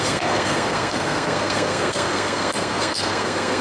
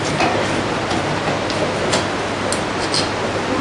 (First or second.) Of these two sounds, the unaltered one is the second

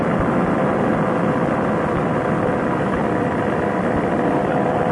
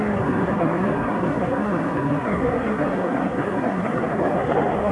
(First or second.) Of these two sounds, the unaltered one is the first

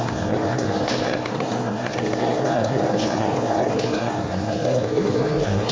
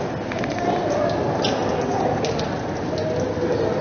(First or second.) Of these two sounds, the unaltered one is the second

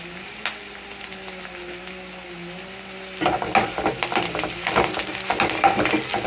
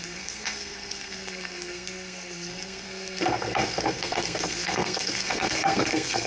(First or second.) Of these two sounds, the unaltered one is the first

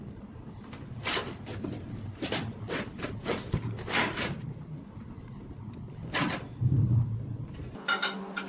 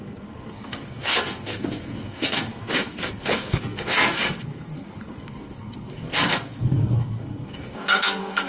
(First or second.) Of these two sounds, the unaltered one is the first